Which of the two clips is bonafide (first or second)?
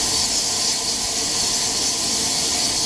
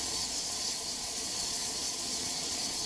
first